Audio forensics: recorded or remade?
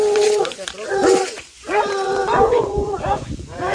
remade